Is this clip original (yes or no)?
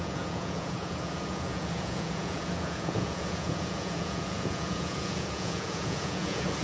no